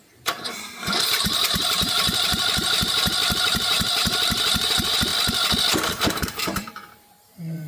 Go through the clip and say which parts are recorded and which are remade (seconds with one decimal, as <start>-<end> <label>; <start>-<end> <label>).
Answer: 0.0-5.1 remade; 5.1-5.9 recorded; 5.9-7.7 remade